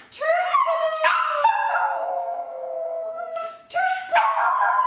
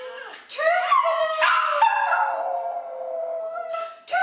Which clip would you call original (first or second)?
second